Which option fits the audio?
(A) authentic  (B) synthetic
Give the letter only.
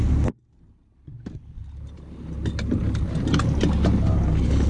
A